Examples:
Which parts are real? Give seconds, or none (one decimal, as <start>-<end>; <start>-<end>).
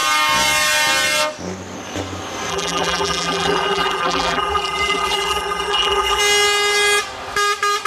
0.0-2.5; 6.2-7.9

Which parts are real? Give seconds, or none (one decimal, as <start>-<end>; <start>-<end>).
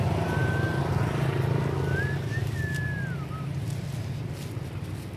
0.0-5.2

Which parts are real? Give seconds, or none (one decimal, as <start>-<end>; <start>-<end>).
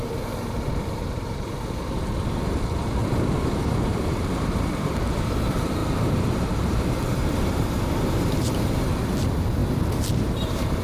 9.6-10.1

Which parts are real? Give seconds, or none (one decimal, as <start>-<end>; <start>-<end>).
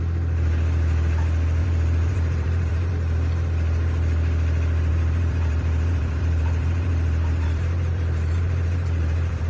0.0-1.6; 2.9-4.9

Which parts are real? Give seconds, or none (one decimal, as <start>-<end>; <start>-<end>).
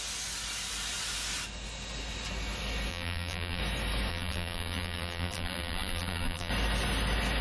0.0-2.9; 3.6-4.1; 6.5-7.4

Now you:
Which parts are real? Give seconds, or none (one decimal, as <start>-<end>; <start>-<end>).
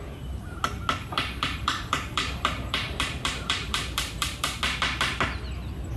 0.0-1.0; 4.6-6.0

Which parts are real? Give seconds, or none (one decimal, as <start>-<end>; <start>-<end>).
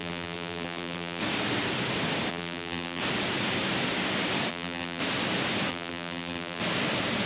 1.2-2.3; 3.0-4.5; 5.0-5.7; 6.6-7.3